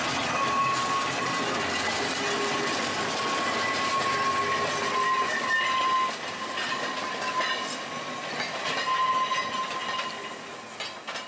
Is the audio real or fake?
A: real